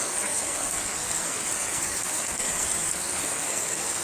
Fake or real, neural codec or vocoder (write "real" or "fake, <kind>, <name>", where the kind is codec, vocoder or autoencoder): fake, codec, SNAC